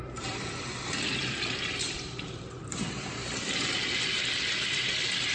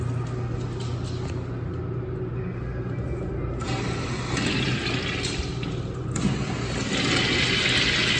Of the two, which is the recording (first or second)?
second